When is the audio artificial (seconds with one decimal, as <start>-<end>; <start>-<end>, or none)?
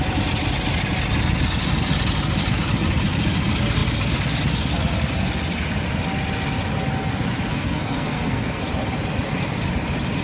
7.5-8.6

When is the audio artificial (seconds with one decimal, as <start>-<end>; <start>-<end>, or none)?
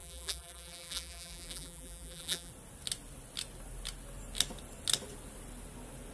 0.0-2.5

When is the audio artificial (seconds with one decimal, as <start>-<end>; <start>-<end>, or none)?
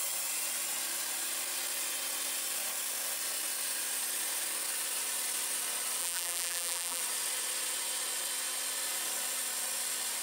6.0-7.0